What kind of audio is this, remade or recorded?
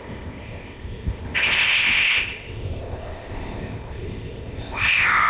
remade